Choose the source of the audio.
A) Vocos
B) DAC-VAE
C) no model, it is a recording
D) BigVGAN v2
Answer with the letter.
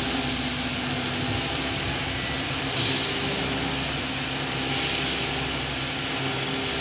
C